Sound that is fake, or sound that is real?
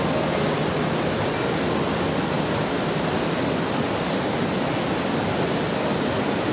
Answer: real